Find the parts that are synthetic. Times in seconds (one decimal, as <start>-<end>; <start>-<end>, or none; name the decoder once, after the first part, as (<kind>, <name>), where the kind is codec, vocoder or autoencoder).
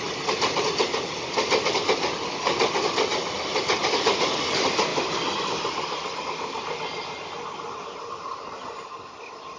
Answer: none